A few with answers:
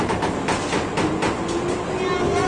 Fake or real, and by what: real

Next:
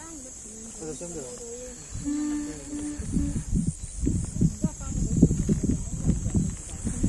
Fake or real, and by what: real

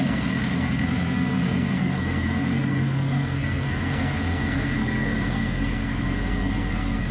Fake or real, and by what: fake, codec, SNAC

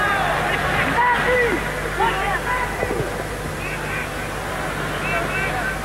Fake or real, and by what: real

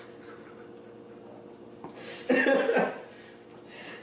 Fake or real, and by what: real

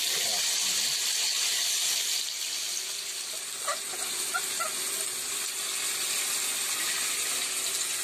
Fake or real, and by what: real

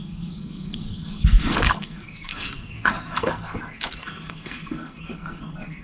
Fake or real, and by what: fake, codec, SNAC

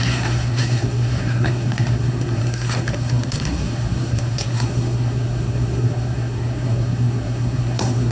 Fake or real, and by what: fake, codec, SNAC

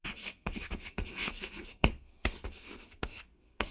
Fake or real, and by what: fake, codec, SNAC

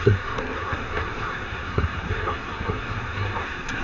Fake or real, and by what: fake, codec, SNAC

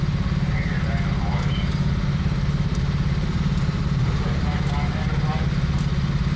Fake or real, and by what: real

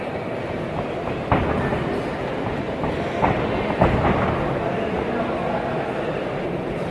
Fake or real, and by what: real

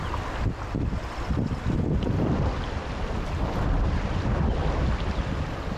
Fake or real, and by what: real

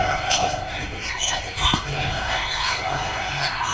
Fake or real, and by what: fake, codec, SNAC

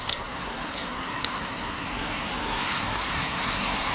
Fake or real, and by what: fake, codec, SNAC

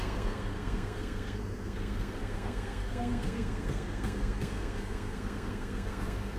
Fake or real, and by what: fake, codec, SNAC